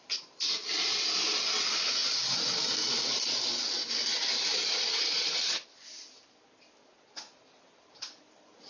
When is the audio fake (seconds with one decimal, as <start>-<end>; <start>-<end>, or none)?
none